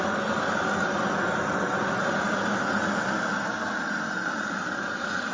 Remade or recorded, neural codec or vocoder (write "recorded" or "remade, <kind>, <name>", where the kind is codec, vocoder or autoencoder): recorded